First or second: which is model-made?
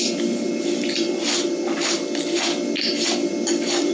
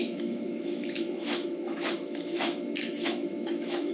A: second